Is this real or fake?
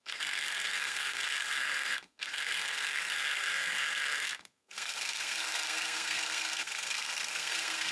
fake